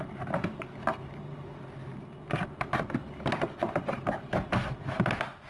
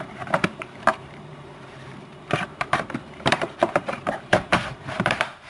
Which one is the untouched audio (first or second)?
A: first